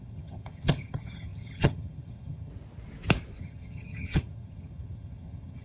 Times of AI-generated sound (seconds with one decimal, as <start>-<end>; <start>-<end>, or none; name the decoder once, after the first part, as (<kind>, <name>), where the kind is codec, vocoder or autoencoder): 0.0-2.5 (vocoder, HiFi-GAN); 3.4-5.6